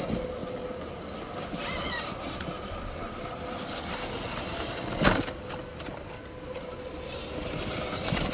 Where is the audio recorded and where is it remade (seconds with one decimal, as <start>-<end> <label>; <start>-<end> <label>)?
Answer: 0.0-8.3 recorded